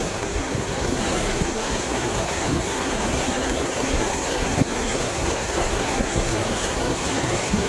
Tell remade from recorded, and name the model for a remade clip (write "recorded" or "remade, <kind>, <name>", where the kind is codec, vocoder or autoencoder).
remade, codec, SNAC